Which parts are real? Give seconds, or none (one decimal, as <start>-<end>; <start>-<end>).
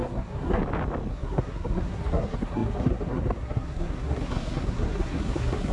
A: 0.6-1.1